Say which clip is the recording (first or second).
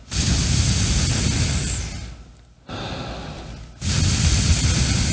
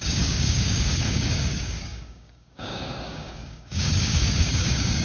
first